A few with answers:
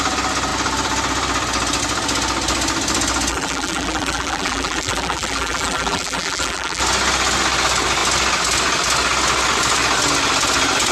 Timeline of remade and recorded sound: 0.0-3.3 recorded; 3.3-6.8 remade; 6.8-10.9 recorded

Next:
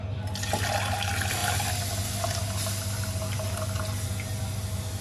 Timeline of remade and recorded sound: 0.0-5.0 recorded

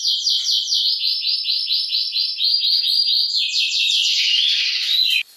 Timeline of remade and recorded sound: 0.0-5.4 remade

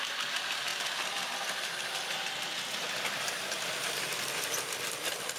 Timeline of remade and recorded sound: 0.0-5.4 recorded